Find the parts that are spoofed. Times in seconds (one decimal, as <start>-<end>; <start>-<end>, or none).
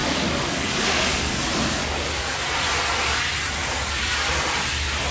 0.0-1.1; 1.8-2.4; 3.6-4.3